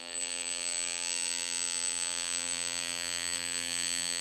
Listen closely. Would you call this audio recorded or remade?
remade